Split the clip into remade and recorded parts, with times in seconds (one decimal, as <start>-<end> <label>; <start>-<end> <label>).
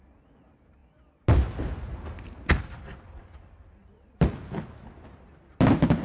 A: 0.0-6.0 recorded